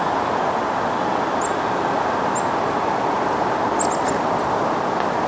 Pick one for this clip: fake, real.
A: real